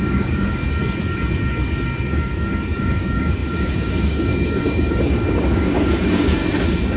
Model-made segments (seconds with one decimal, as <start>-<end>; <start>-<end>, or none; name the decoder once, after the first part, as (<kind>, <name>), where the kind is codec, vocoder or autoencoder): 0.0-0.6 (codec, DAC); 2.1-6.4

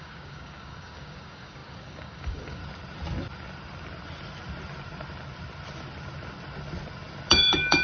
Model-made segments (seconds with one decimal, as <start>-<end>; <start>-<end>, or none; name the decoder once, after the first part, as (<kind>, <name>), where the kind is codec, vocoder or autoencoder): 0.0-2.6 (codec, DAC); 7.3-7.8

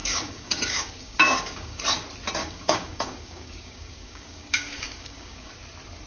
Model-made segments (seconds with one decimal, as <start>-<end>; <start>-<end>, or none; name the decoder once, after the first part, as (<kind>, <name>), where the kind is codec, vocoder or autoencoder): 0.0-1.8 (codec, DAC); 2.4-5.5

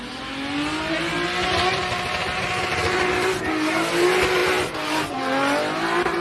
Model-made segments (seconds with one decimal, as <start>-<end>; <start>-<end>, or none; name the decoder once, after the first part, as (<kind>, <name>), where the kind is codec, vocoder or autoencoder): none

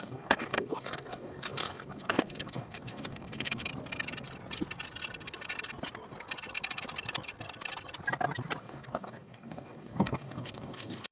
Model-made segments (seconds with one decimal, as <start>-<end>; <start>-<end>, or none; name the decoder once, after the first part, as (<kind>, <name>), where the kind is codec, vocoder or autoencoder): 0.0-3.7 (codec, DAC); 8.6-11.1